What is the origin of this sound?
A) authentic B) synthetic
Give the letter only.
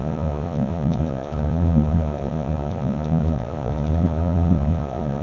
B